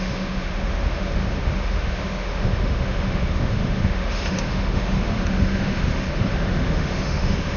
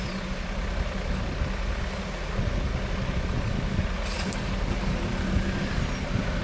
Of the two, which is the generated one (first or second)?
first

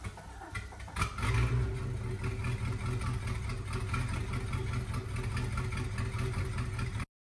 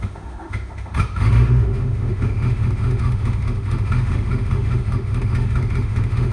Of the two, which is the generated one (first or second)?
second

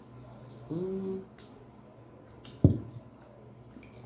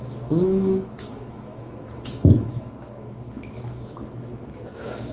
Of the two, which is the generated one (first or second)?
second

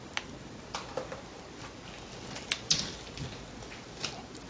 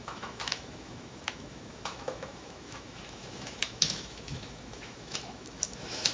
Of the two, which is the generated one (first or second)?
second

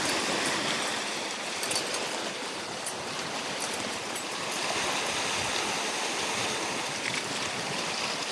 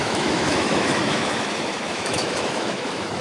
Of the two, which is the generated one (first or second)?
second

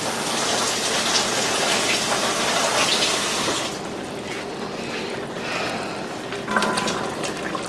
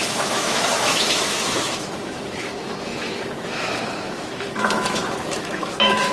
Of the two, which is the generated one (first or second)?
second